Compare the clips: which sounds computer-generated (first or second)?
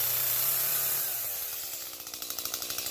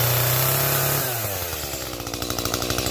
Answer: first